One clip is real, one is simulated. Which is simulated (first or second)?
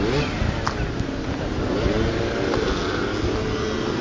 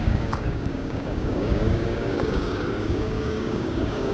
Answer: second